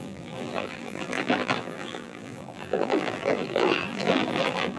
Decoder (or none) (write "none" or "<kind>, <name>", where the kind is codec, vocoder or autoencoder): vocoder, BigVGAN v2